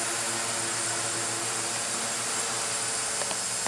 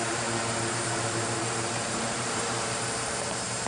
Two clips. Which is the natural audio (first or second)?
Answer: first